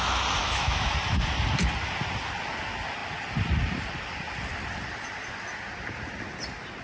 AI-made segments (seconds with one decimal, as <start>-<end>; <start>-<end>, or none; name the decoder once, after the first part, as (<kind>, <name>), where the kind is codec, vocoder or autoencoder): 0.4-0.9 (autoencoder, DAC-VAE)